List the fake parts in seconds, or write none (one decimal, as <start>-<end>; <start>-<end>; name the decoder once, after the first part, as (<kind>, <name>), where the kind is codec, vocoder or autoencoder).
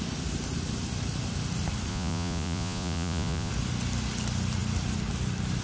1.9-3.5 (vocoder, Vocos)